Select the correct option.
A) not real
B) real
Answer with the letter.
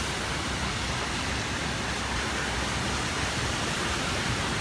B